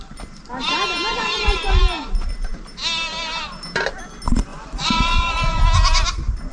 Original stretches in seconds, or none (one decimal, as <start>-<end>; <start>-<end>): 0.0-1.1; 1.8-4.5; 5.6-6.5